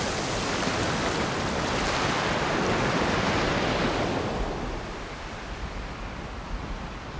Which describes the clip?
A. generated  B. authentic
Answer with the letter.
B